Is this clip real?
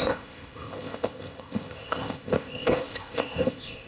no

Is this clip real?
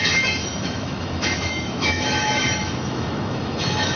no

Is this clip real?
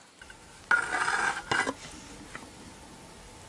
yes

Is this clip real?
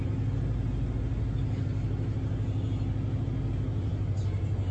yes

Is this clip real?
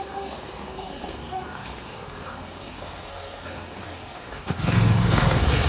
no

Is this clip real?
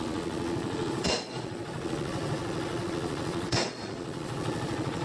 no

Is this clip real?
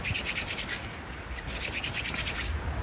yes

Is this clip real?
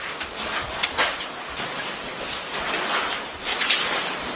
yes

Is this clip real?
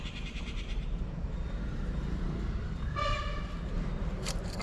no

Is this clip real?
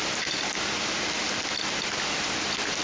yes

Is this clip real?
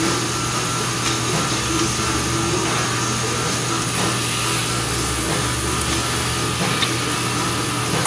yes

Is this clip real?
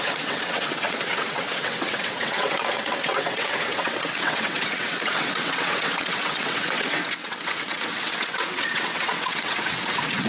no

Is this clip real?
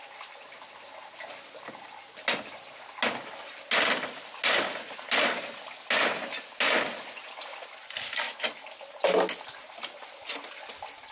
yes